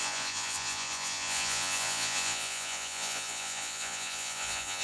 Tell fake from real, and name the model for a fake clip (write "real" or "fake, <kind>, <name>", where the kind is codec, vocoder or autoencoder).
fake, vocoder, Vocos